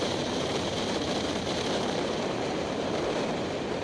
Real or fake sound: fake